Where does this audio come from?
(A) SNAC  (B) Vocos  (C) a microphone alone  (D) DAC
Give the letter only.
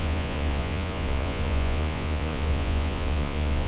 B